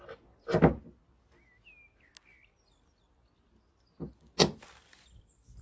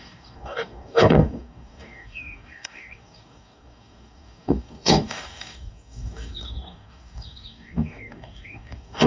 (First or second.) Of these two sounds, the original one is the first